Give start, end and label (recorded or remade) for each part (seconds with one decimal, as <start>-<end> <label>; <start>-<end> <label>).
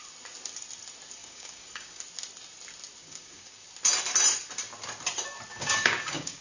0.0-1.2 recorded; 1.2-2.0 remade; 2.0-3.0 recorded; 3.0-3.7 remade; 3.7-5.5 recorded; 5.5-6.4 remade